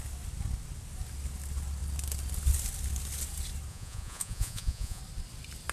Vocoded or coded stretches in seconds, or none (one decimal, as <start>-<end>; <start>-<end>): 3.7-5.0